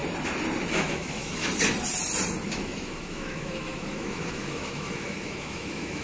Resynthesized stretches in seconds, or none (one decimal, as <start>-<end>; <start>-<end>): 0.7-1.5; 2.5-6.0